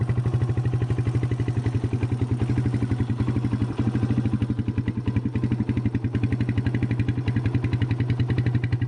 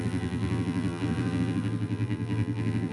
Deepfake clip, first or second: second